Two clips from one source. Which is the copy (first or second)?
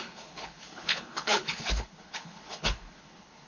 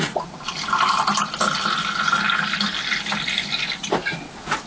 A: first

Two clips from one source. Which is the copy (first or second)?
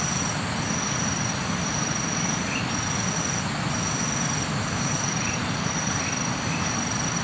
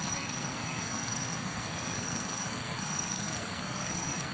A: second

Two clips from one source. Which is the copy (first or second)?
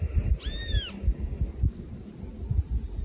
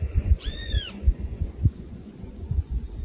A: second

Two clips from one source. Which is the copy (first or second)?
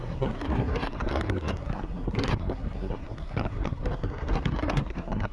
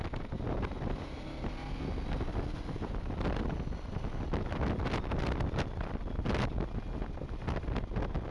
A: first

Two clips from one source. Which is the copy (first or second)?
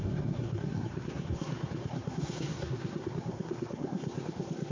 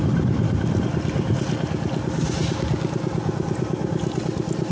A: first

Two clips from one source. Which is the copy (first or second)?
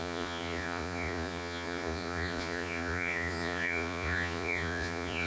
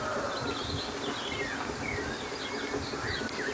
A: first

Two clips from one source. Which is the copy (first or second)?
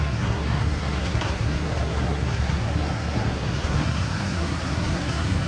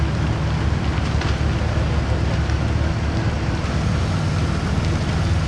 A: first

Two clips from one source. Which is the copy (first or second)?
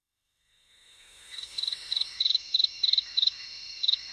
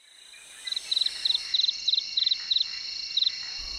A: first